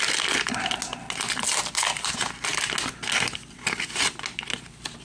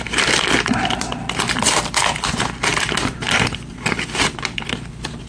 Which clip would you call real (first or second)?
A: first